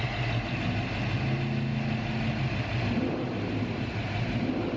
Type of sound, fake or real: real